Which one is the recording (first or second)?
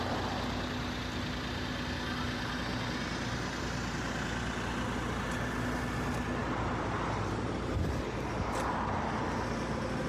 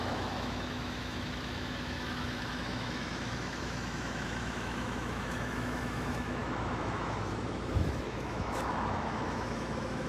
first